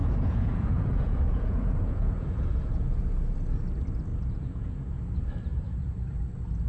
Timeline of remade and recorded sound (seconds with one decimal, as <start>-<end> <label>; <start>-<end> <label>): 0.0-3.0 remade; 3.0-4.1 recorded; 4.1-5.0 remade; 5.0-5.5 recorded; 5.5-6.1 remade; 6.1-6.7 recorded